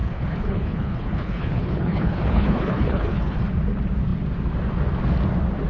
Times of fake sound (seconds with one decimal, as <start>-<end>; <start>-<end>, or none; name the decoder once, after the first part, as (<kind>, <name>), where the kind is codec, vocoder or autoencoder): 0.0-3.4 (codec, HILCodec)